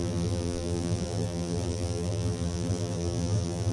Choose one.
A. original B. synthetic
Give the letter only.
B